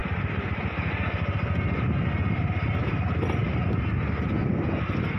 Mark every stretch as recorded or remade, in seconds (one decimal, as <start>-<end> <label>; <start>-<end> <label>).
0.0-5.2 recorded